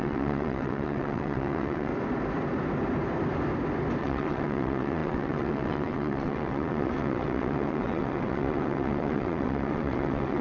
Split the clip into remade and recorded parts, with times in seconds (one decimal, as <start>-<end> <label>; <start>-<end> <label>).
0.0-1.9 remade; 1.9-4.0 recorded; 4.0-10.4 remade

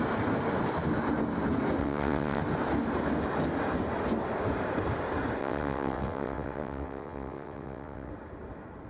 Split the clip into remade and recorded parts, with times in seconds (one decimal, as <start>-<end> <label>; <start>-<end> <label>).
0.0-1.8 recorded; 1.8-2.4 remade; 2.4-5.4 recorded; 5.4-8.1 remade; 8.1-8.9 recorded